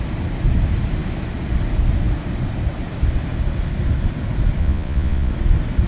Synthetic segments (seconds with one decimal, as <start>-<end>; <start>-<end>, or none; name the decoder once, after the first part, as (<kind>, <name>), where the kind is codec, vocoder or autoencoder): 4.6-5.3 (vocoder, Vocos)